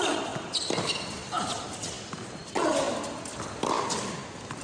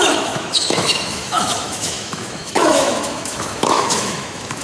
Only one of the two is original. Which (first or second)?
first